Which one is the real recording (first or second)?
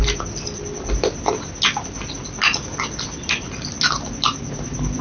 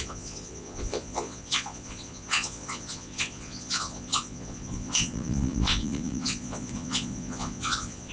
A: first